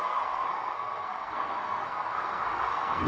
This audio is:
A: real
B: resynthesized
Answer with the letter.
B